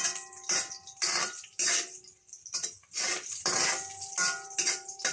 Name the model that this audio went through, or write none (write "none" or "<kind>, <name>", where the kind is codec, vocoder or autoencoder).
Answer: none